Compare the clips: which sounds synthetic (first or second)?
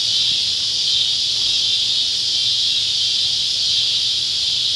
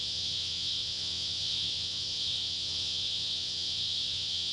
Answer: second